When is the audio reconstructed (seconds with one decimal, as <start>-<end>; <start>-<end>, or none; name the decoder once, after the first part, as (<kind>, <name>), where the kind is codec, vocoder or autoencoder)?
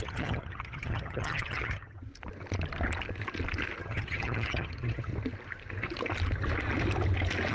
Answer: 0.0-2.1 (vocoder, HiFi-GAN); 3.8-5.1